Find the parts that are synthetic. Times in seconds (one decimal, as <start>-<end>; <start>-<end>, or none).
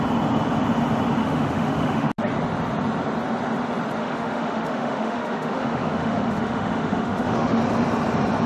1.2-2.1; 4.0-7.6